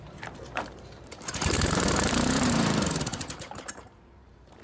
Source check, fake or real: fake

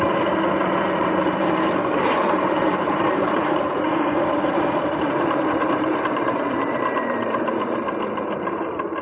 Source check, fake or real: fake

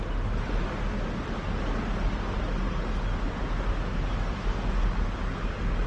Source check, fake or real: real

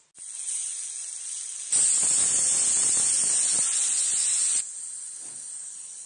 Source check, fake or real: real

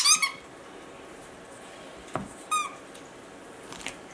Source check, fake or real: real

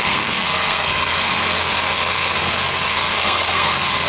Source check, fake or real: fake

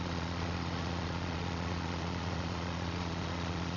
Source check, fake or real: fake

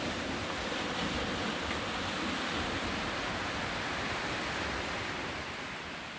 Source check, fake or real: real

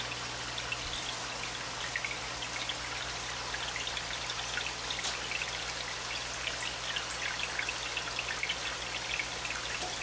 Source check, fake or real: real